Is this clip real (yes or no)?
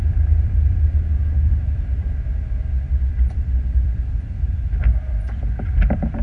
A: no